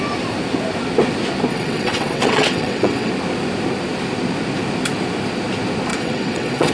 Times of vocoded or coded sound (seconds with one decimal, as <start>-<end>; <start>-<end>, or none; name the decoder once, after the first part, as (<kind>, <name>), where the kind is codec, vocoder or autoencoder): 1.5-3.1 (vocoder, WaveNeXt); 5.9-6.7